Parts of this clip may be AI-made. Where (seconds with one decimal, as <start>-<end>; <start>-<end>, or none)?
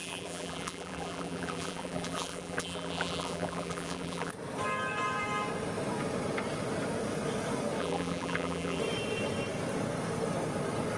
0.0-4.3; 7.8-8.8